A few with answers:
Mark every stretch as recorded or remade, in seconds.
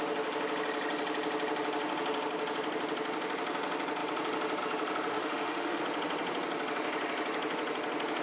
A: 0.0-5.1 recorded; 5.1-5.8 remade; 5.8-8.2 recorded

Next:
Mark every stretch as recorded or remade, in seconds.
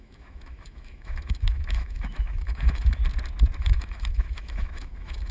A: 0.0-3.0 remade; 3.0-3.6 recorded; 3.6-5.3 remade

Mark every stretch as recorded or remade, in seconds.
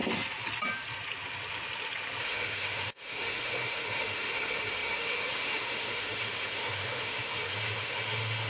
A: 0.0-2.2 recorded; 2.2-8.5 remade